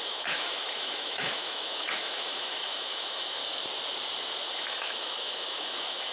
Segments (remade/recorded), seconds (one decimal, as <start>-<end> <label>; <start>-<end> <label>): 0.0-3.4 remade; 3.4-4.4 recorded; 4.4-6.1 remade